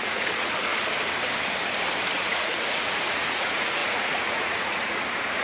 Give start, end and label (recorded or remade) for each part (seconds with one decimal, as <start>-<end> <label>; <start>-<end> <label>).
0.0-0.7 remade; 0.7-2.1 recorded; 2.1-5.4 remade